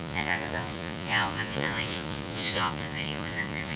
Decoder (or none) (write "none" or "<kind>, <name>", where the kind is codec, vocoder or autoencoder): vocoder, Vocos